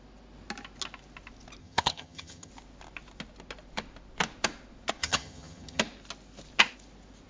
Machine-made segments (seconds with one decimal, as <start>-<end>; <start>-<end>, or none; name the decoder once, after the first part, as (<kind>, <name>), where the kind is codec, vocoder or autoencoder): 1.6-2.5 (vocoder, HiFi-GAN); 5.0-5.8